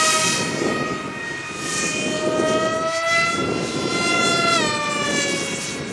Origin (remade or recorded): recorded